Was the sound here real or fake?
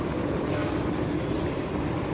real